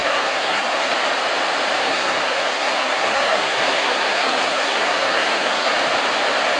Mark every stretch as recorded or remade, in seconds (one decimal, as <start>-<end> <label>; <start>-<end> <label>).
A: 0.0-0.9 remade; 0.9-1.8 recorded; 1.8-5.7 remade; 5.7-6.6 recorded